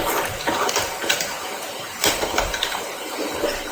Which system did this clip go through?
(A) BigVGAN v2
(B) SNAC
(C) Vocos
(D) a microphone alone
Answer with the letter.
A